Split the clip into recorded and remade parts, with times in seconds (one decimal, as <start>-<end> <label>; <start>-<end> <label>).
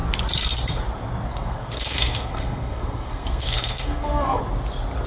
0.0-1.3 recorded; 1.3-4.4 remade; 4.4-5.1 recorded